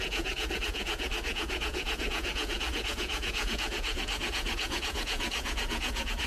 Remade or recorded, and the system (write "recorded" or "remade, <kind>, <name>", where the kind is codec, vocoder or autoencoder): remade, vocoder, Vocos